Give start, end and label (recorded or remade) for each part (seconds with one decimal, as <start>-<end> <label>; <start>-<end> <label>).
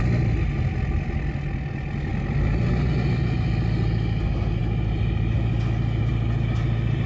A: 0.0-2.1 recorded; 2.1-2.7 remade; 2.7-7.1 recorded